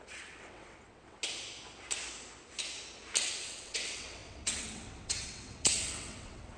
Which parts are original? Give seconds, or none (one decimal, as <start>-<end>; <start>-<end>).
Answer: 1.2-3.2